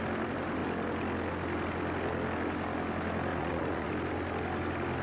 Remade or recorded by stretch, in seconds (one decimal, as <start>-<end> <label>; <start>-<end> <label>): 0.0-3.3 recorded; 3.3-3.9 remade; 3.9-5.0 recorded